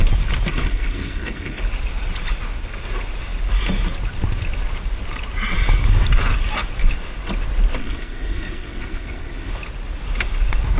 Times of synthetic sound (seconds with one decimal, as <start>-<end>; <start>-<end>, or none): 0.5-1.6; 7.8-9.5